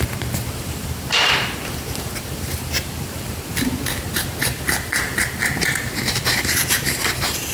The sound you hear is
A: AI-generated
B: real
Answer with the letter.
A